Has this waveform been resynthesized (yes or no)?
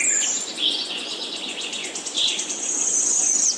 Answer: yes